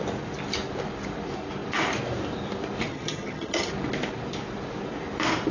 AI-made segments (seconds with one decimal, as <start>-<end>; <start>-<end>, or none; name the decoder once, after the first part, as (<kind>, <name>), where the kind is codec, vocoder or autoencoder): 2.9-3.7 (vocoder, HiFi-GAN)